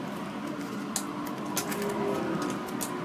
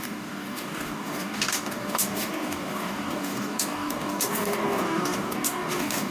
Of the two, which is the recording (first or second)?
first